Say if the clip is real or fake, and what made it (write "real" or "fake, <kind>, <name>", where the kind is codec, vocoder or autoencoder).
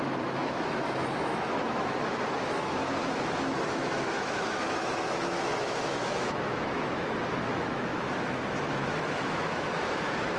fake, autoencoder, DAC-VAE